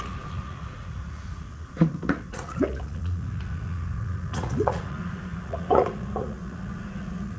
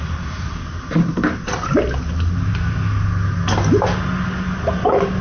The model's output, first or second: first